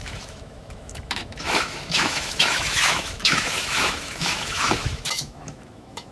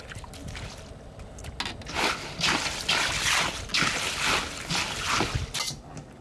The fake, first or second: first